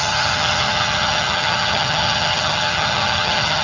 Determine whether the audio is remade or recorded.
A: remade